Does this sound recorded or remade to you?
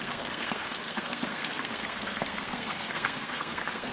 remade